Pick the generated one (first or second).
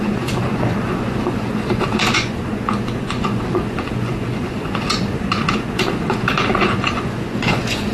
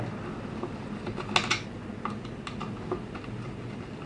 first